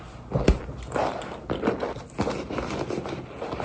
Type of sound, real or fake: real